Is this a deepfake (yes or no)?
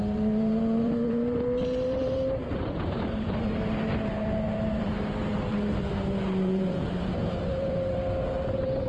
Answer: yes